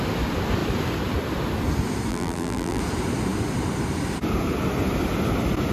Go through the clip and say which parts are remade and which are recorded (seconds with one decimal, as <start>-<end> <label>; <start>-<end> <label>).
0.0-2.1 recorded; 2.1-2.8 remade; 2.8-5.7 recorded

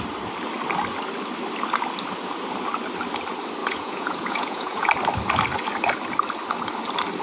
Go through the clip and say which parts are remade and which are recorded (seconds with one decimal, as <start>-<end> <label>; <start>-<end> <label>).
0.0-3.6 recorded; 3.6-4.9 remade; 4.9-7.2 recorded